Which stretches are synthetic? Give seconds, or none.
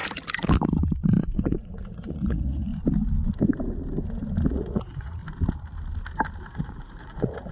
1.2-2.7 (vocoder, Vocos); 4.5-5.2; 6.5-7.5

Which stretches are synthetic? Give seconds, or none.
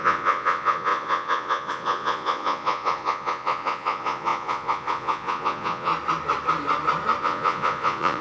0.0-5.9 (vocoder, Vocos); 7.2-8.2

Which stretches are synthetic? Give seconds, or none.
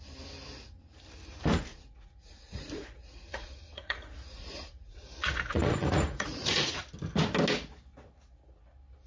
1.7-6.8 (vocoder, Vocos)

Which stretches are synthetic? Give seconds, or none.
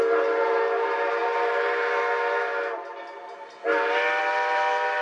none